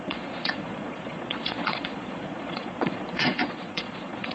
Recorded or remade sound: remade